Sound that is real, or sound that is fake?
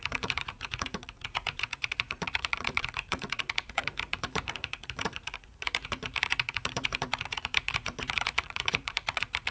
fake